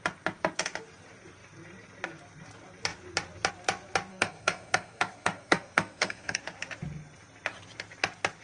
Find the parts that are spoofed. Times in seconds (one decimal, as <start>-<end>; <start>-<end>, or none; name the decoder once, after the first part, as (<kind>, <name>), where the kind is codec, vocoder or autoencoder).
4.1-6.4 (codec, SNAC)